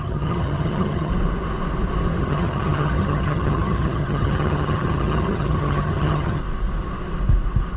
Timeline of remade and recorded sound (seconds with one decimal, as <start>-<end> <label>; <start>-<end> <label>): 0.0-1.1 remade; 1.1-2.2 recorded; 2.2-6.4 remade; 6.4-7.8 recorded